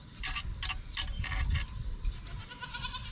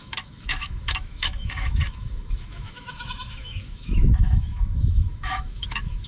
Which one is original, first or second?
first